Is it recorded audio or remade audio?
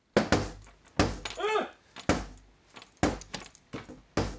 recorded